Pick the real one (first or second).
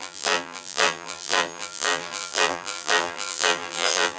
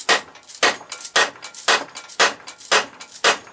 second